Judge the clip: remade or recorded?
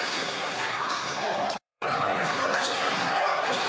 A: remade